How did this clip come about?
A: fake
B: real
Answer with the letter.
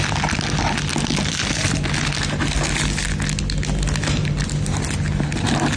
B